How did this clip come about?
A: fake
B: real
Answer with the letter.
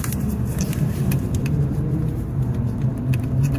B